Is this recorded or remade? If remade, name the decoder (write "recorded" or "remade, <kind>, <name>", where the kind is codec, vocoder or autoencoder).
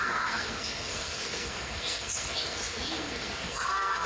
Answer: remade, codec, SNAC